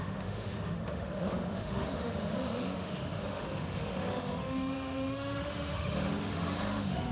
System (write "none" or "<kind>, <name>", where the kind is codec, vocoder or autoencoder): autoencoder, DAC-VAE